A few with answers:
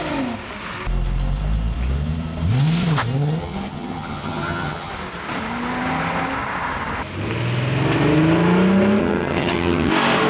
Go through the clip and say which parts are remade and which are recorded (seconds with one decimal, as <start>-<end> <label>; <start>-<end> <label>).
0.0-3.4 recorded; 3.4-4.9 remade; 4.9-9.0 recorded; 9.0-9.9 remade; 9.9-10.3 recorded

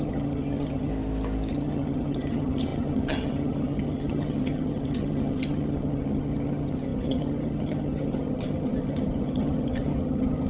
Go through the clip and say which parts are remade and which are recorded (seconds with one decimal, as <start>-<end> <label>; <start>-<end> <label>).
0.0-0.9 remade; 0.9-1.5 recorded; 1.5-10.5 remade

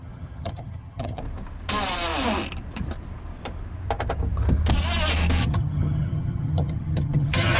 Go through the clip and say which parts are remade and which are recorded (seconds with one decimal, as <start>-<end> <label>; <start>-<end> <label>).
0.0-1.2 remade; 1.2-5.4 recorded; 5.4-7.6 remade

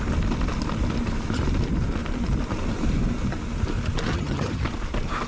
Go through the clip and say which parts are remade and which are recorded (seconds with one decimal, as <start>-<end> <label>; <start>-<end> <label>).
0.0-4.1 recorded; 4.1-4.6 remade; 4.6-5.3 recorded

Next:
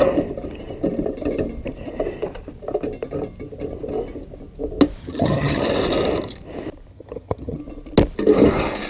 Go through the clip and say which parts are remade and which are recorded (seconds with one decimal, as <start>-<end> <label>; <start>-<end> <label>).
0.0-5.0 recorded; 5.0-5.6 remade; 5.6-6.9 recorded; 6.9-7.6 remade; 7.6-8.9 recorded